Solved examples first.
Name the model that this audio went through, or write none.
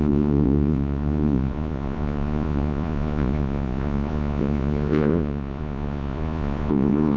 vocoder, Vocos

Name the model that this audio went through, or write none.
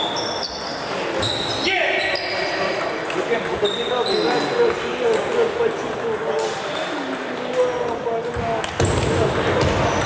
none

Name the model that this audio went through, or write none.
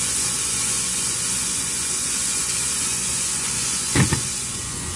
vocoder, Vocos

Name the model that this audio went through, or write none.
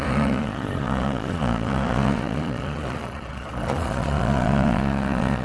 vocoder, Vocos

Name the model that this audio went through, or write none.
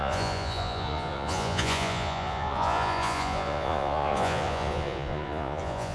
vocoder, Vocos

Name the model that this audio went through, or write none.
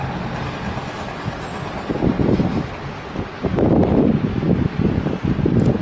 none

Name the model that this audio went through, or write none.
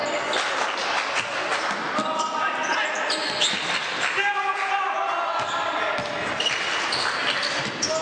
none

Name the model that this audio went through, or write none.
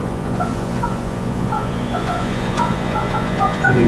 vocoder, Vocos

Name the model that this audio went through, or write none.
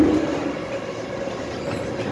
none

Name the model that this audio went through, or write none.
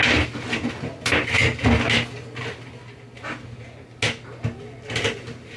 none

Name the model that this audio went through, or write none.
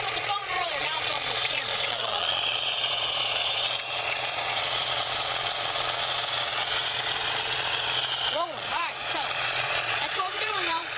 vocoder, Vocos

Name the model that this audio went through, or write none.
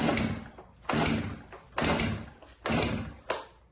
none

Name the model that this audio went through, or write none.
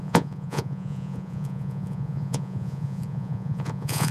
vocoder, Vocos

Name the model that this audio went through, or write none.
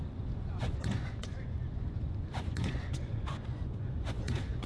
vocoder, Vocos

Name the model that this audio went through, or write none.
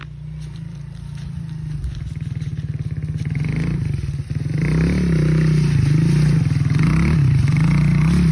none